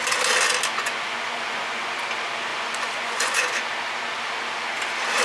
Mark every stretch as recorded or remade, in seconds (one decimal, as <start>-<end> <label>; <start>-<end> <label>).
0.0-0.7 recorded; 0.7-2.0 remade; 2.0-2.5 recorded; 2.5-3.5 remade; 3.5-5.2 recorded